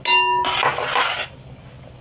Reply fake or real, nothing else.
real